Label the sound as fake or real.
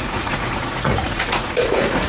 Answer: fake